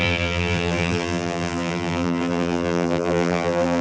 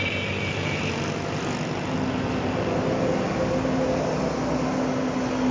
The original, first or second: second